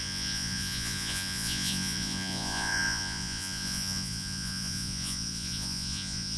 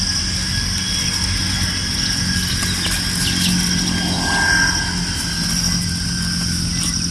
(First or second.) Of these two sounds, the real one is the second